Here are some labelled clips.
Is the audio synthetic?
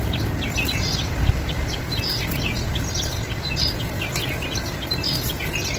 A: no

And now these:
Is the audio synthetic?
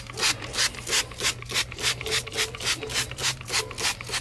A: no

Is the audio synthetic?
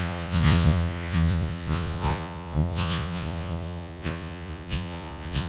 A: yes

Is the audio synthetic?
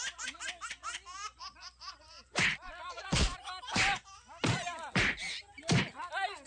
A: yes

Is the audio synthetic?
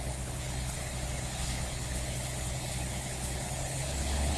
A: yes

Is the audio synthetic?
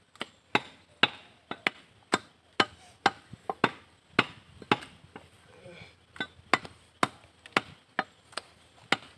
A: no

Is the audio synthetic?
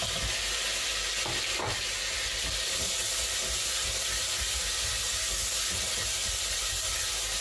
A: no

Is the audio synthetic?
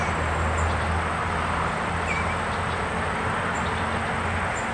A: no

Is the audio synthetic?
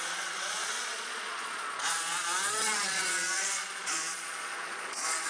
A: yes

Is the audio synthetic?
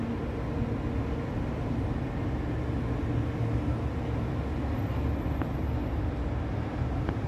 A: no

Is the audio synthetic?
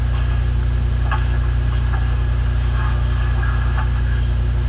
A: no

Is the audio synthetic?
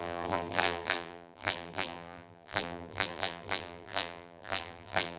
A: yes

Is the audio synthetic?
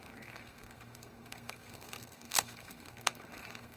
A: yes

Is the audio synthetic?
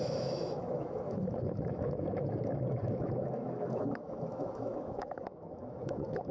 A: yes